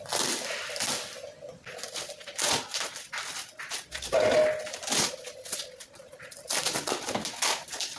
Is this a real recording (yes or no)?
yes